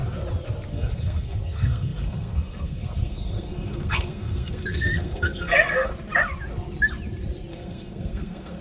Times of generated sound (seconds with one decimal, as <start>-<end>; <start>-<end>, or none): 0.7-5.9; 7.5-8.6